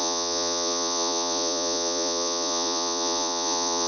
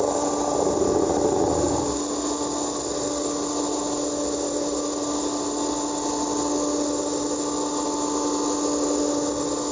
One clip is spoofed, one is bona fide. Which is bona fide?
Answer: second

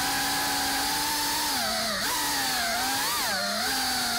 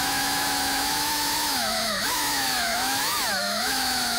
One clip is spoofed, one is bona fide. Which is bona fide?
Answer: first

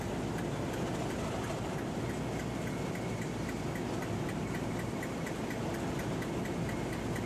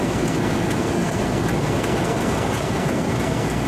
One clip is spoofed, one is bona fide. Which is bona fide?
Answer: first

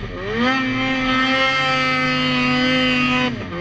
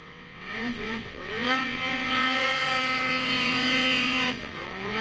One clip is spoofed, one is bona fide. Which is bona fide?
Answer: first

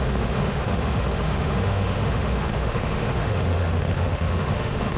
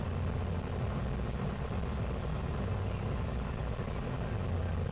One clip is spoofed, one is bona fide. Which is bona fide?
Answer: second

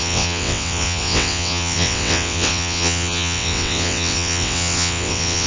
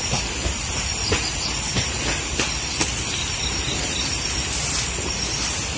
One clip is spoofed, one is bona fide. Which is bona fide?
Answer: second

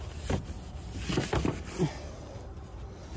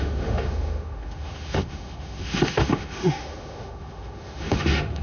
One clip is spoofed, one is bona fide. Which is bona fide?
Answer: first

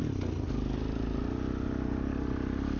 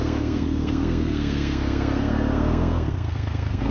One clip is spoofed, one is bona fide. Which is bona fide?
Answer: first